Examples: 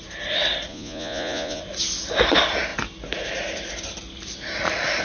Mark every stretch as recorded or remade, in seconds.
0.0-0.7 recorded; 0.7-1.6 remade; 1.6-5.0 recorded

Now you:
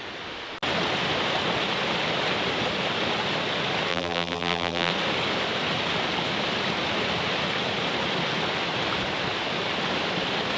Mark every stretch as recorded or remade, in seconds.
0.0-3.9 recorded; 3.9-4.9 remade; 4.9-10.6 recorded